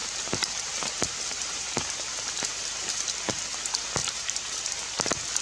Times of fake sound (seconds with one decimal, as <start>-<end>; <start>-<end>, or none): 0.0-3.0; 4.0-4.6